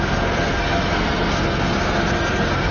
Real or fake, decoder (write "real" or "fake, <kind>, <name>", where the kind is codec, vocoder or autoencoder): fake, codec, SNAC